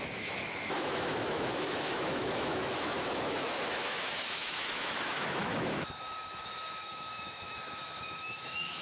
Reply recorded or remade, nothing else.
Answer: remade